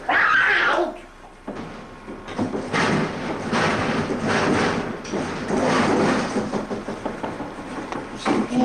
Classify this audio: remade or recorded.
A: recorded